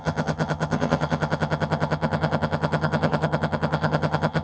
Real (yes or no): no